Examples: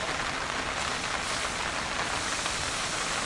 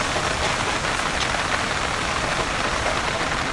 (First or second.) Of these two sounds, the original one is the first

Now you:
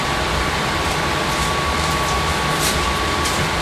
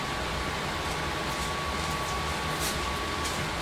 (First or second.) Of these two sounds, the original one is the second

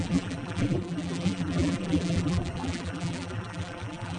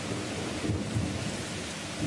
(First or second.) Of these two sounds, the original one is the second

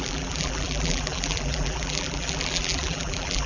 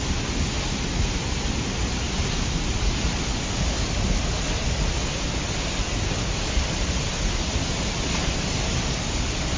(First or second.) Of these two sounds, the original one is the second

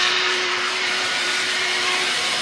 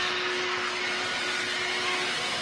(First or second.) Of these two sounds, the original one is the second